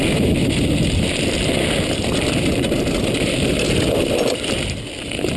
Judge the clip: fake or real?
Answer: real